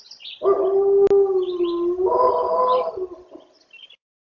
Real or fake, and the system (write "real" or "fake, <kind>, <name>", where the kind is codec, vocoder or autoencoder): real